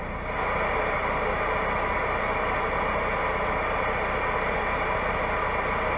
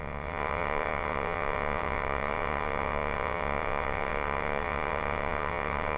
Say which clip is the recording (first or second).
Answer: first